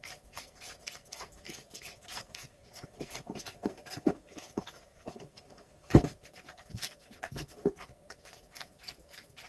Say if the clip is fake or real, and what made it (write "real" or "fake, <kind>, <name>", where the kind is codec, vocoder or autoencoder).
fake, codec, SNAC